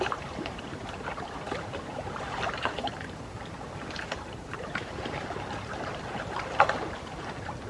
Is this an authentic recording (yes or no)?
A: no